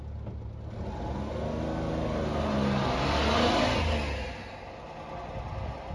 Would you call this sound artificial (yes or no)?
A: no